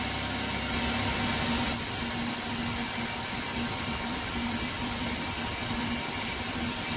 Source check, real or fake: real